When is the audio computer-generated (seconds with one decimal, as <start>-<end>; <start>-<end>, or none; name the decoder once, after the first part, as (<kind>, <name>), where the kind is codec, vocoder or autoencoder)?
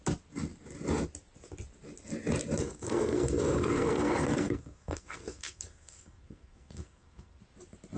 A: 2.6-7.4 (codec, SNAC)